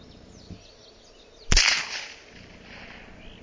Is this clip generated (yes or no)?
no